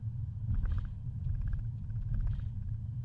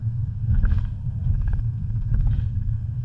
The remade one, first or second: second